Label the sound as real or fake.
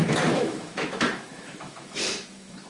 fake